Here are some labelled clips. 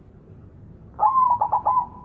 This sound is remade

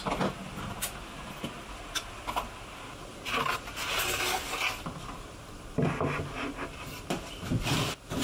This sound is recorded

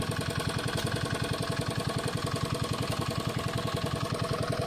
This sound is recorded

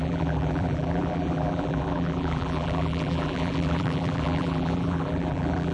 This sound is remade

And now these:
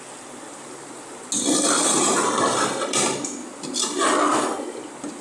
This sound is recorded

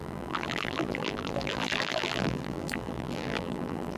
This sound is remade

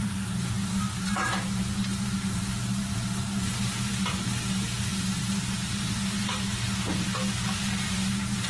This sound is remade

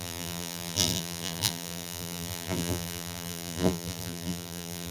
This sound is remade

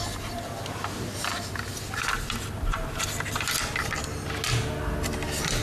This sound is recorded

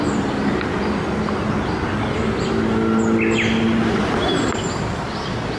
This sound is recorded